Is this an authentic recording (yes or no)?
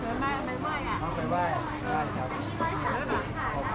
yes